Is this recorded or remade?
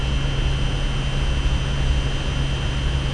recorded